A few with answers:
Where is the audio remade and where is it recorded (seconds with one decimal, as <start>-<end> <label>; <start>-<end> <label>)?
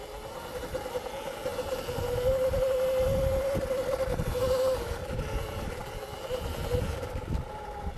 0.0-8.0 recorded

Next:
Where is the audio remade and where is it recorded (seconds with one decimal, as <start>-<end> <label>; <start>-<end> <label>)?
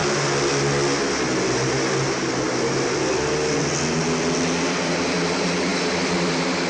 0.0-6.7 recorded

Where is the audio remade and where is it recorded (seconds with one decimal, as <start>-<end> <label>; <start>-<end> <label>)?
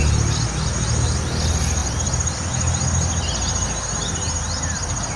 0.0-5.2 recorded